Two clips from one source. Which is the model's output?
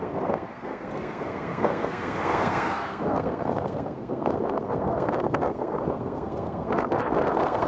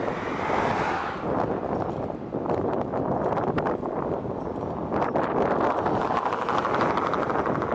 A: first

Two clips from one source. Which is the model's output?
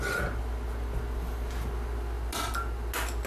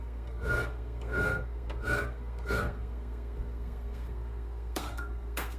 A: second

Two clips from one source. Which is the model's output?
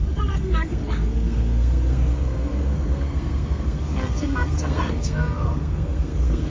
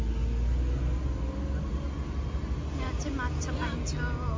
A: first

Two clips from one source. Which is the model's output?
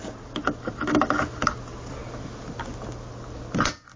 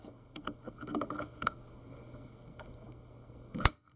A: second